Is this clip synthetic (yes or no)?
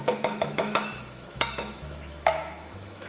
yes